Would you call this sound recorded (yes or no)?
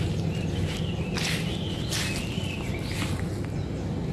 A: yes